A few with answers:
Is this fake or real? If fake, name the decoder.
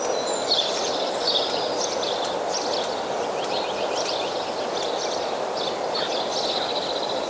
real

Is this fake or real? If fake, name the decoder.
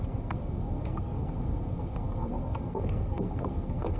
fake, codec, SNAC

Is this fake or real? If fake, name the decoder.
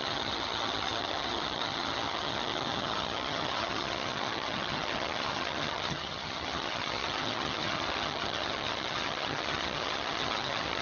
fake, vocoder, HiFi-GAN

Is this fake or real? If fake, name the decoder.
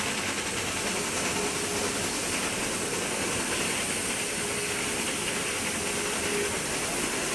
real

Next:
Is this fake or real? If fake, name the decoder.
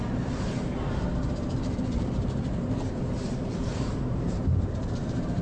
fake, vocoder, BigVGAN v2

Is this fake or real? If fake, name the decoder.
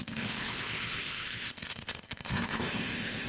fake, codec, ZipCodec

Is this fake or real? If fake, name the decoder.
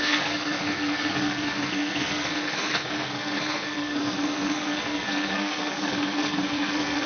fake, codec, SNAC